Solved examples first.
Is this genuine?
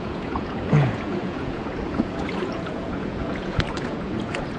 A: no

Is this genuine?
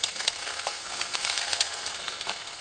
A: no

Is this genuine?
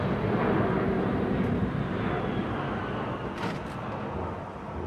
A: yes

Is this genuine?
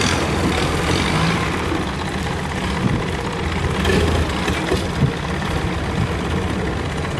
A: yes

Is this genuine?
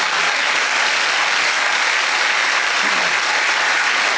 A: yes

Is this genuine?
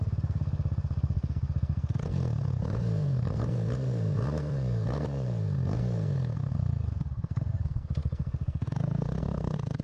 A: no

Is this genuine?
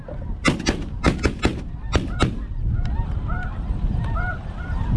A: yes